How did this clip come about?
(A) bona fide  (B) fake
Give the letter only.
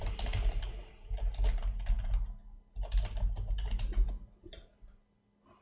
A